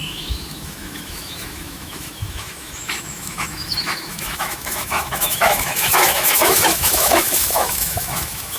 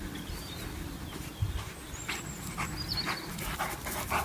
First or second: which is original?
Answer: second